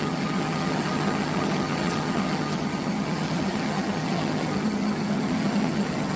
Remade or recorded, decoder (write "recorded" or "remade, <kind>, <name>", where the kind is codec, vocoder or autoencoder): remade, vocoder, HiFi-GAN